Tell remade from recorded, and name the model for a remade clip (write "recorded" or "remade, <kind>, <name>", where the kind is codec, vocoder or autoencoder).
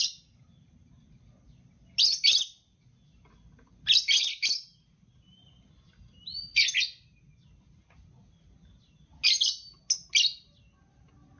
recorded